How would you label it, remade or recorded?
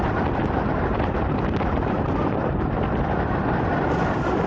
recorded